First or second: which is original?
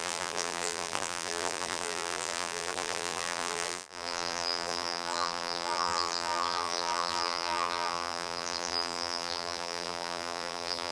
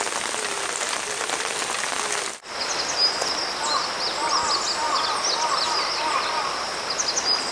second